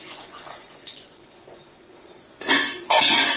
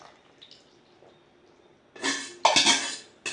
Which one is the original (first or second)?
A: second